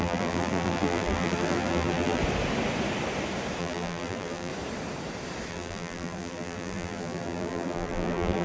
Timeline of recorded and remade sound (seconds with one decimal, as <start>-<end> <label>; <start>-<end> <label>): 0.0-2.2 remade; 2.2-3.6 recorded; 3.6-4.5 remade; 4.5-5.5 recorded; 5.5-8.4 remade